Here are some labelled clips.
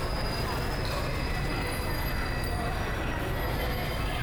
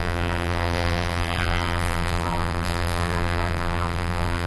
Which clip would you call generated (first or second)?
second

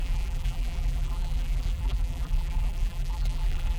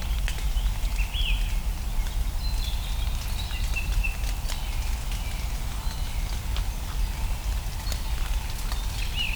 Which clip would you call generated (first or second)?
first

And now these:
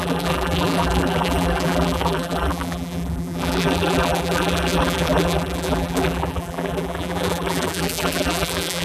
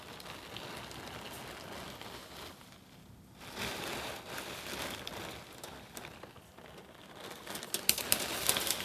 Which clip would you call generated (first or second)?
first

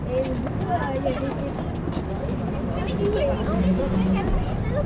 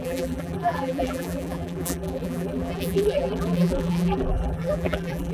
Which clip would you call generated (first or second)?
second